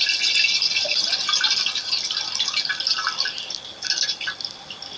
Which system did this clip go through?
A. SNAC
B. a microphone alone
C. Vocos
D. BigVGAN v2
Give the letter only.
B